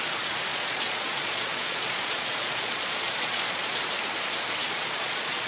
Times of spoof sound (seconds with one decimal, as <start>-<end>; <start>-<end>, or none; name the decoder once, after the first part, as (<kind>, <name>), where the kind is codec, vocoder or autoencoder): 0.5-3.8 (vocoder, Vocos); 4.6-5.5